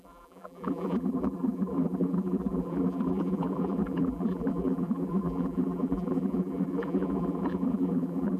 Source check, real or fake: fake